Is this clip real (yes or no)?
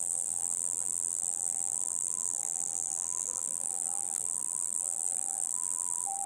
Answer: no